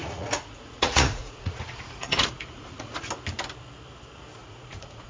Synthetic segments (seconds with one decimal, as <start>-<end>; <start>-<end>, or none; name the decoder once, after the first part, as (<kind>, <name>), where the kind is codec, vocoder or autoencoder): 0.0-3.1 (vocoder, Vocos); 4.4-5.1